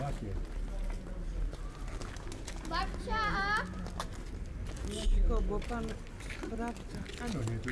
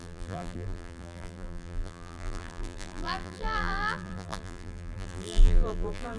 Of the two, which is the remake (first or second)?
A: second